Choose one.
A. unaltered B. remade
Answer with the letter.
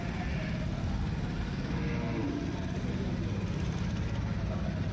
A